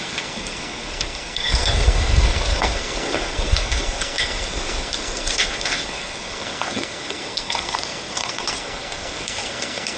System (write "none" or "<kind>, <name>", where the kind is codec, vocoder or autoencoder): codec, SNAC